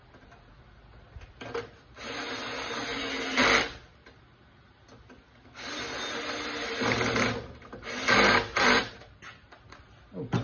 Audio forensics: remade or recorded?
recorded